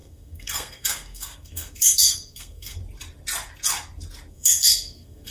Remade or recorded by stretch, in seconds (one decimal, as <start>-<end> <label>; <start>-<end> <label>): 0.0-2.8 remade; 2.8-4.3 recorded; 4.3-5.3 remade